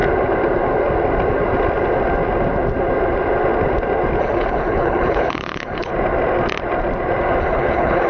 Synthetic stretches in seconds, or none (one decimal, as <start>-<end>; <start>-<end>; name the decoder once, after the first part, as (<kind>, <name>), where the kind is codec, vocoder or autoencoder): 4.2-5.9 (codec, HILCodec); 7.4-8.1